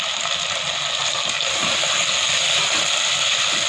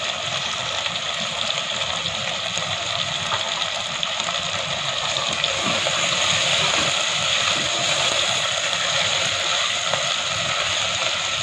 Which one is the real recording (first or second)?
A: first